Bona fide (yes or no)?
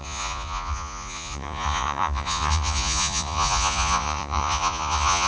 no